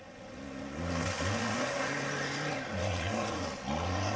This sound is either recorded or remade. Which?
recorded